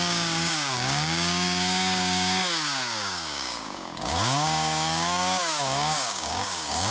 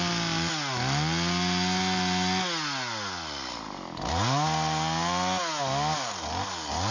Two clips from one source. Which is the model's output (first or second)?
first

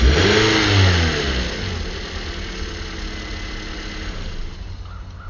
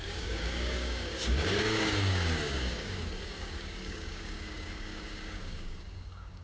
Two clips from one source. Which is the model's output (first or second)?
second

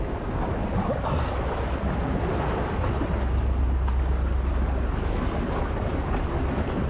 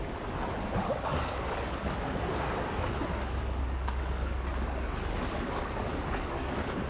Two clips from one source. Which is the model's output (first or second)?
second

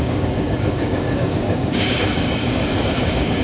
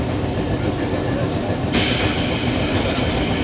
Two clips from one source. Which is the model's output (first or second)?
first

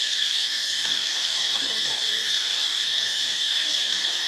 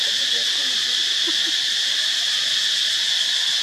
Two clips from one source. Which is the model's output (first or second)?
first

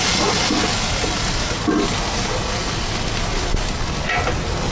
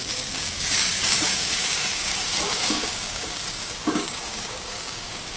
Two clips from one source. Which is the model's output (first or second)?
second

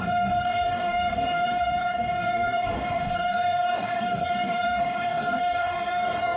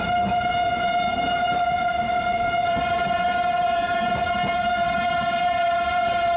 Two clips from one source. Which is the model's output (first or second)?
first